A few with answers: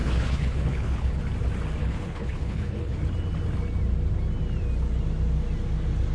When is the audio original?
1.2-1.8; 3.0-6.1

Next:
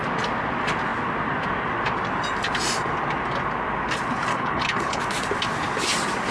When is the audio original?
0.0-4.3; 5.0-6.3

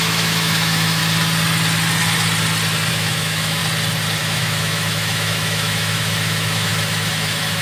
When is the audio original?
1.0-2.9; 3.6-4.2